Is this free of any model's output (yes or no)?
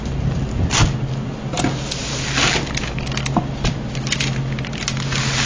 yes